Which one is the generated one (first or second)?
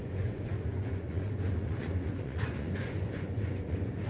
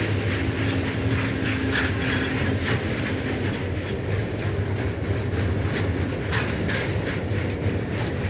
first